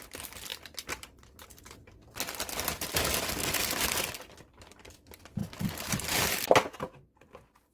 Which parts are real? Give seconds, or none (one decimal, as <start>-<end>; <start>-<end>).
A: 0.0-7.7